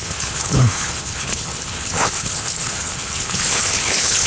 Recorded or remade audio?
remade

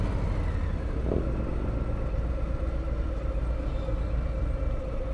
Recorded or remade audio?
recorded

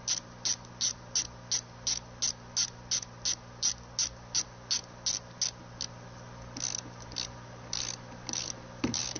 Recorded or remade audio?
recorded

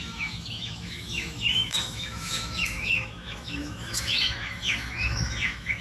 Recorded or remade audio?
remade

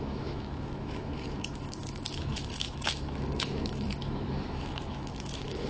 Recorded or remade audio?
remade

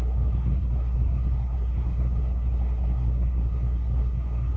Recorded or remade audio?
remade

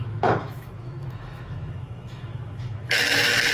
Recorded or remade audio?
remade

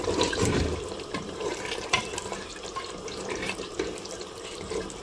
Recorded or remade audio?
remade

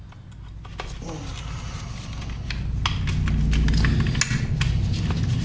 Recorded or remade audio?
recorded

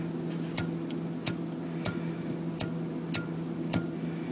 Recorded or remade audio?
recorded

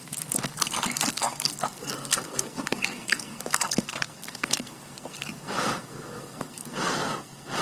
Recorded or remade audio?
remade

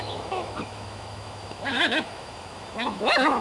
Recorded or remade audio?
remade